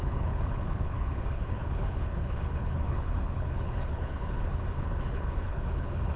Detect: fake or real fake